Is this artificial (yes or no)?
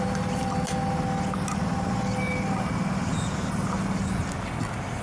no